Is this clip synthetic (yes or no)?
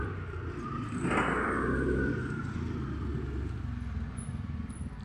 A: no